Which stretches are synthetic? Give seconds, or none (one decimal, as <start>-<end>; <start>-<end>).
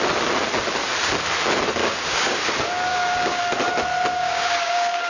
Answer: 1.8-2.4; 2.9-3.4; 4.1-5.1